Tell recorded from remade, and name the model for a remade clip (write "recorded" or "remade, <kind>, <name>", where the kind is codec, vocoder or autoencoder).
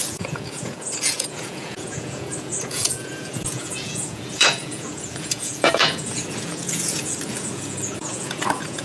remade, vocoder, Vocos